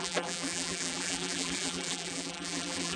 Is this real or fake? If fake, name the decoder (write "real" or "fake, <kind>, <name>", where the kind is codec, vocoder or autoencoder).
fake, vocoder, BigVGAN v2